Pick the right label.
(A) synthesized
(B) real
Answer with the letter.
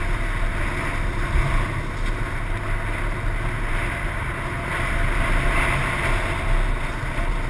B